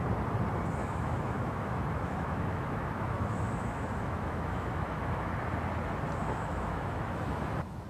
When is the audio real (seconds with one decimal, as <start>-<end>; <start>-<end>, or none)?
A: 0.0-0.8; 5.3-6.2; 7.5-7.9